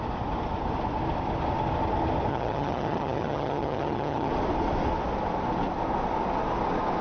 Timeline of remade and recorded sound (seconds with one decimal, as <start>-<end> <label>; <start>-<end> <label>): 0.0-2.3 recorded; 2.3-4.3 remade; 4.3-7.0 recorded